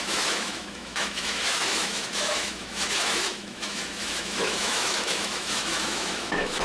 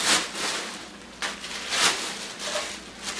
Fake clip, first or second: first